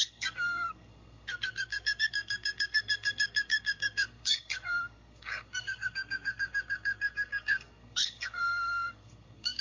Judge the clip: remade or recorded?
remade